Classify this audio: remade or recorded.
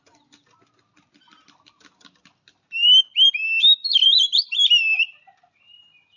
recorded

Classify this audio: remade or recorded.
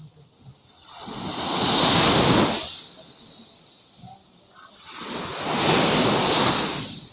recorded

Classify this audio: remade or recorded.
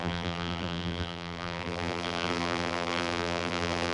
remade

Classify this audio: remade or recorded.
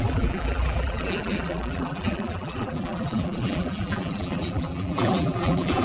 remade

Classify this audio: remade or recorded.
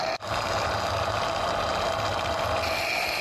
recorded